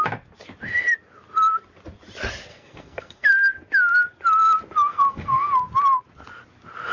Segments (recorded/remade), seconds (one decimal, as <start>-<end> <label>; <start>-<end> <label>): 0.0-2.5 recorded; 2.5-3.3 remade; 3.3-4.9 recorded; 4.9-5.5 remade; 5.5-6.9 recorded

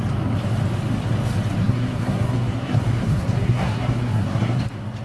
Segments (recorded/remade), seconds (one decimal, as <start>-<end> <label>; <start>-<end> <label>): 0.0-1.6 recorded; 1.6-4.6 remade; 4.6-5.0 recorded

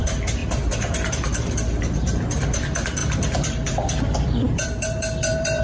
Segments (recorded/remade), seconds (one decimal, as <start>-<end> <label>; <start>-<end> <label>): 0.0-3.0 recorded; 3.0-5.6 remade

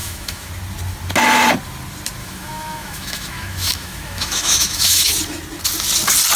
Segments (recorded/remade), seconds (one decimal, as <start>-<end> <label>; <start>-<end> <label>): 0.0-0.5 remade; 0.5-2.2 recorded; 2.2-5.1 remade; 5.1-6.4 recorded

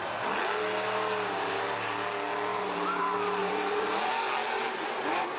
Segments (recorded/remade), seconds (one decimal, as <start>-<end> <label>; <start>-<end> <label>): 0.0-2.5 recorded; 2.5-3.0 remade; 3.0-3.4 recorded; 3.4-4.1 remade; 4.1-5.4 recorded

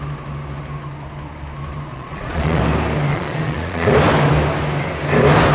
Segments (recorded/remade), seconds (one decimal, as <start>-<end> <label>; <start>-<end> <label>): 0.0-1.9 recorded; 1.9-2.6 remade; 2.6-3.1 recorded; 3.1-3.9 remade; 3.9-5.5 recorded

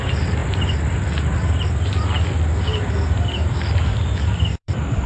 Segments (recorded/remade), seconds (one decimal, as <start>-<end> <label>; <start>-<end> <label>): 0.0-2.7 recorded; 2.7-5.1 remade

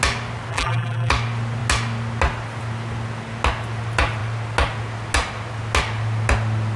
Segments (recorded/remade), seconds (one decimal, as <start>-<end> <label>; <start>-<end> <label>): 0.0-0.5 recorded; 0.5-1.1 remade; 1.1-6.8 recorded